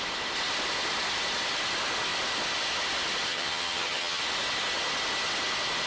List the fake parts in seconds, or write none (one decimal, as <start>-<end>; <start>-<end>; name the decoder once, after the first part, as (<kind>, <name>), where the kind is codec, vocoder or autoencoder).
3.3-4.2 (vocoder, HiFi-GAN)